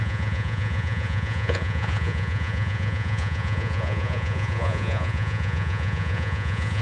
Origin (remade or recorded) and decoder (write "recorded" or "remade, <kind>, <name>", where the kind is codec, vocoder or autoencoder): remade, vocoder, Vocos